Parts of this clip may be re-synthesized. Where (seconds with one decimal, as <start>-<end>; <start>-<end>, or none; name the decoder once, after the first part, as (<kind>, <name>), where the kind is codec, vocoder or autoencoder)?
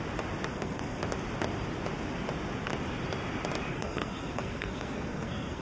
0.5-1.0 (codec, SNAC); 3.7-5.6